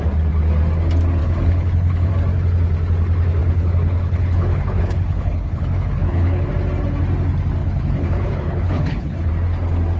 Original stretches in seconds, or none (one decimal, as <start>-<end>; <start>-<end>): 0.0-1.2; 2.1-3.4; 6.5-7.6; 9.3-10.0